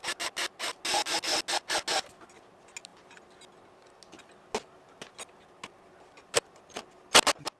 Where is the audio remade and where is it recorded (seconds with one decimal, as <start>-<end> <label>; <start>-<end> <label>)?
0.0-7.6 recorded